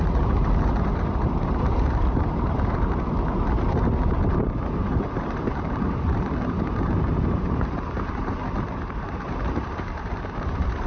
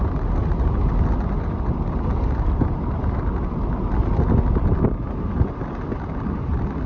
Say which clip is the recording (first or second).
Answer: second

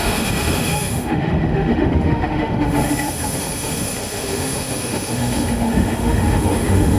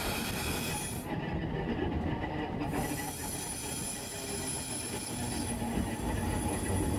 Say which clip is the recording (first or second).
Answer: second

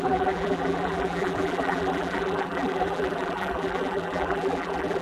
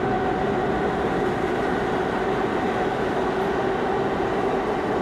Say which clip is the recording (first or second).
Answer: second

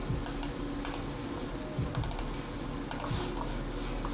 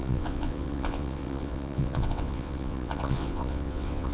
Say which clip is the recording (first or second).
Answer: first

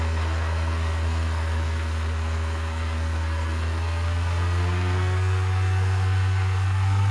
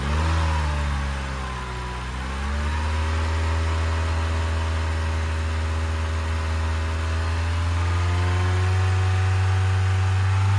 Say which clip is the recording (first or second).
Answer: second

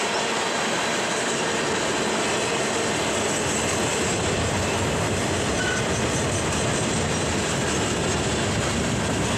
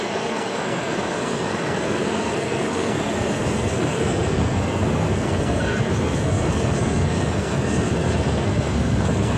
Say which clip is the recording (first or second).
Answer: first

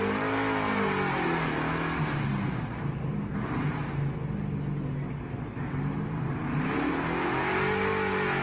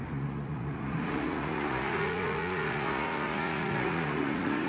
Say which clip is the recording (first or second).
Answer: first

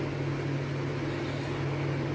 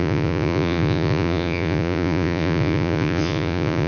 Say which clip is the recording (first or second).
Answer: first